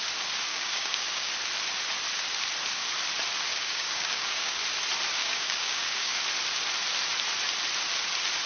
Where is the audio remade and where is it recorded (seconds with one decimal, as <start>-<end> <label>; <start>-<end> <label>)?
0.0-0.5 recorded; 0.5-1.3 remade; 1.3-3.5 recorded; 3.5-4.6 remade; 4.6-5.2 recorded; 5.2-6.2 remade; 6.2-8.5 recorded